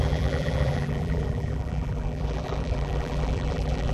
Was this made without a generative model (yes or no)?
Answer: no